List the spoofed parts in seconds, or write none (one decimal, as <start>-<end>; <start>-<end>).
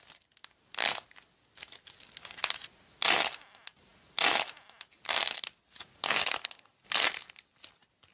none